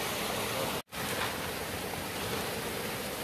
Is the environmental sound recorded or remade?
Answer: recorded